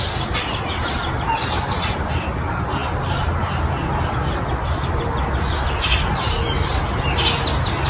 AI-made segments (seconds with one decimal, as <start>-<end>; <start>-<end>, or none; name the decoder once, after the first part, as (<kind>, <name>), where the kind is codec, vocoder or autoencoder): none